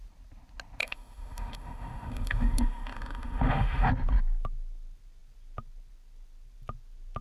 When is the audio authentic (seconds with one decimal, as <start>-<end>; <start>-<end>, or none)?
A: 0.0-0.8; 3.9-7.2